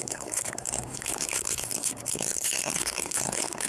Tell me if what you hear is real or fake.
fake